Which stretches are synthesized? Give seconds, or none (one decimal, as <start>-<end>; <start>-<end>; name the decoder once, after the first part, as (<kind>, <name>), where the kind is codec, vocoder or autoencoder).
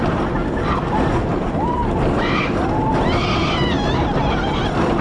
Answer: 1.3-2.4 (vocoder, BigVGAN v2)